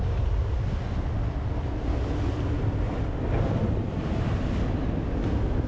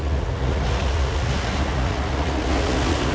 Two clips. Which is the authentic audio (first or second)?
first